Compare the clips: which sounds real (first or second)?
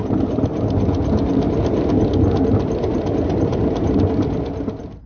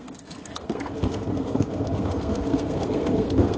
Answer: first